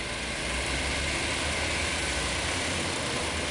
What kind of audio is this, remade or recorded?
recorded